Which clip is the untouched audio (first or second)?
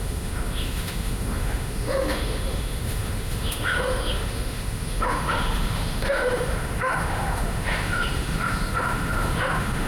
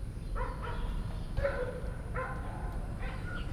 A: second